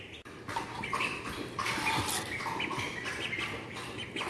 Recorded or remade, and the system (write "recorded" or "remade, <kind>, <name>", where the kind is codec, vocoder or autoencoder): recorded